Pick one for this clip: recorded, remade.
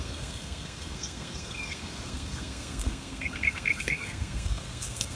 remade